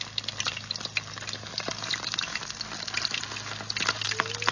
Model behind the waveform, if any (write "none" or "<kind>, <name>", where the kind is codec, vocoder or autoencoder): none